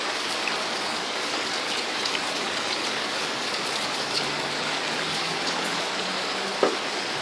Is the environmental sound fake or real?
fake